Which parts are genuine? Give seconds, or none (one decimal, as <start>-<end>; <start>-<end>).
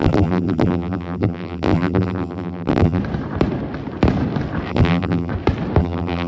3.0-4.7; 5.3-5.8